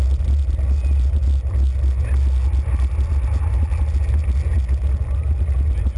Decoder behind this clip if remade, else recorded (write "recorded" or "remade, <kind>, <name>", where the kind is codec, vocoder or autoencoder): recorded